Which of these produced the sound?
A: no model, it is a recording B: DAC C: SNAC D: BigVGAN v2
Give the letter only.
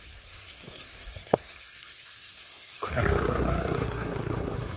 C